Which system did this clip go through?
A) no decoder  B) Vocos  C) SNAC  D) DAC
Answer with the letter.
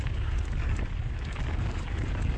D